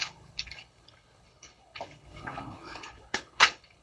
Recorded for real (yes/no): no